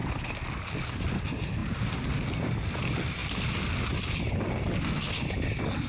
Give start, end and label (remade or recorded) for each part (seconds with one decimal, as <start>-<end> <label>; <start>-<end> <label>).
0.0-5.9 recorded